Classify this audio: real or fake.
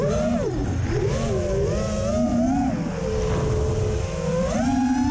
real